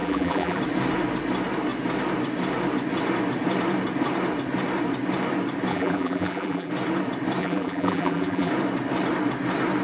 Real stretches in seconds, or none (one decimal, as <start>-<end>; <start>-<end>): 0.6-5.7; 6.7-7.4; 8.5-9.8